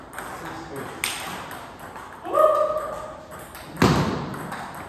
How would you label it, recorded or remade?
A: recorded